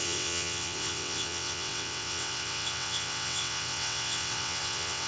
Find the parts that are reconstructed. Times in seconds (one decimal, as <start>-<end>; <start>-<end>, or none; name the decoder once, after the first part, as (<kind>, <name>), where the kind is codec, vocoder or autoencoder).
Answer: 0.0-5.1 (vocoder, WaveNeXt)